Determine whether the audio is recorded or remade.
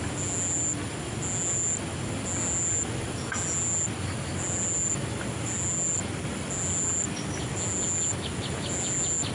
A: recorded